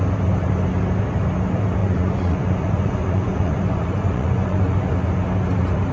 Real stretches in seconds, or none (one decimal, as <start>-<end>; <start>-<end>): 0.0-1.8; 4.6-5.9